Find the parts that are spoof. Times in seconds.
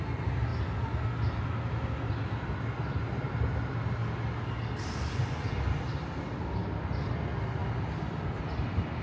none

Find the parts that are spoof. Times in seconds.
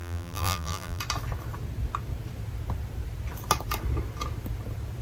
0.0-1.0 (vocoder, BigVGAN v2)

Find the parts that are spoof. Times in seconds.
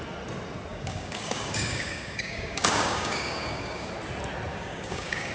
0.7-3.9 (codec, DAC); 4.5-5.3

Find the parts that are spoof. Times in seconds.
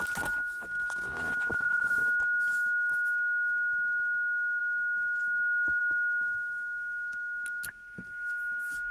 1.5-2.0 (vocoder, Vocos)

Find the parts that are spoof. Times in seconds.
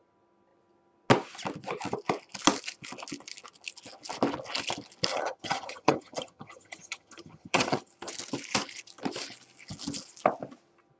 5.1-7.9 (vocoder, HiFi-GAN)